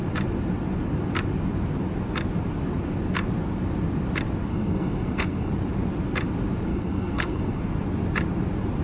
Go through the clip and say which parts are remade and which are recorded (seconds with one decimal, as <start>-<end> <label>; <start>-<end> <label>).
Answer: 0.0-4.5 recorded; 4.5-5.5 remade; 5.5-6.7 recorded; 6.7-7.6 remade; 7.6-8.8 recorded